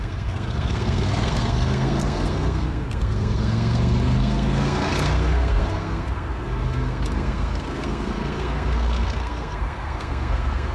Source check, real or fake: fake